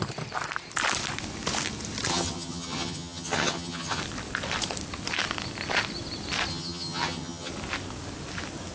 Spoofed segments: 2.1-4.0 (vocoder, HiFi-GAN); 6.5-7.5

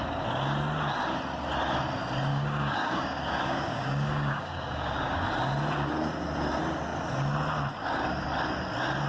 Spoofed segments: 2.3-5.2 (codec, DAC)

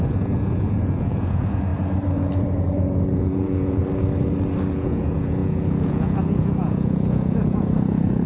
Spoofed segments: 0.0-1.7 (vocoder, Vocos); 3.2-3.8; 4.7-8.3